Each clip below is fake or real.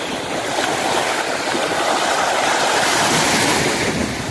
fake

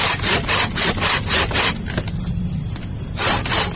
fake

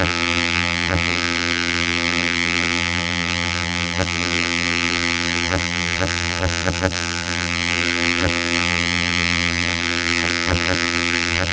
fake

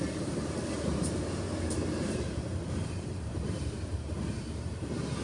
fake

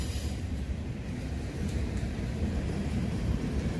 fake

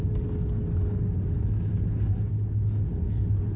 real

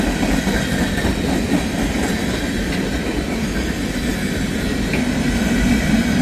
real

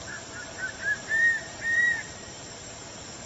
fake